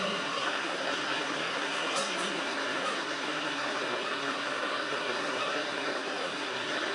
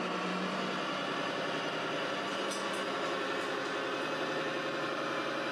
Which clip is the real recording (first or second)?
second